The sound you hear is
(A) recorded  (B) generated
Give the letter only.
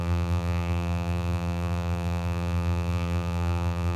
B